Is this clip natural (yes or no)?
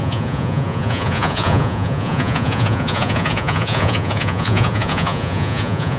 no